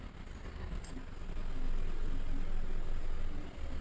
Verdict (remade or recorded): recorded